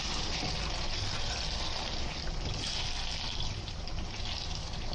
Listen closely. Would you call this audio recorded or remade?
recorded